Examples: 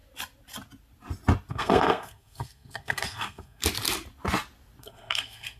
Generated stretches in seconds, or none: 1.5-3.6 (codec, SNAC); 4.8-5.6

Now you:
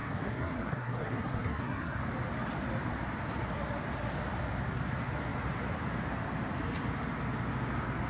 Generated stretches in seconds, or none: 0.0-2.0 (codec, SNAC)